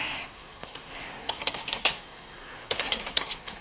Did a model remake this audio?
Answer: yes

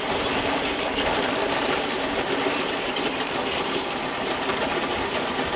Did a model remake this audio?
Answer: yes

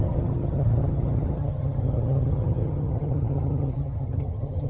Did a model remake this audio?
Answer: yes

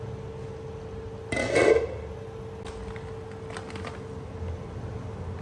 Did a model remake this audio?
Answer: no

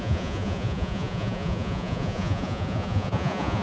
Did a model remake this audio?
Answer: yes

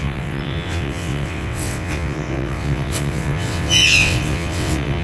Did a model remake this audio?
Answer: yes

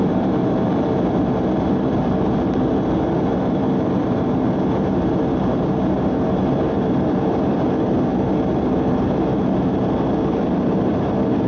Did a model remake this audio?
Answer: yes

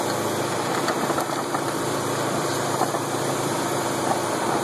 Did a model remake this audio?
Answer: yes